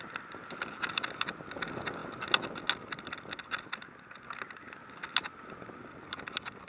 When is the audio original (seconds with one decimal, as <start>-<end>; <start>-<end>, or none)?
0.0-6.7